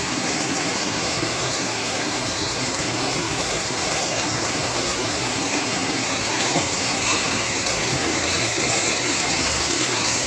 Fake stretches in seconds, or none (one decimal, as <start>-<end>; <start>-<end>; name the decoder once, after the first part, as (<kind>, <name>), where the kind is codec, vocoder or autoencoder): 0.0-10.3 (codec, SNAC)